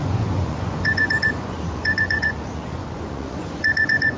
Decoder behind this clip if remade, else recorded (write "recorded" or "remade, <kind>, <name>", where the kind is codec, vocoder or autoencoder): remade, vocoder, Vocos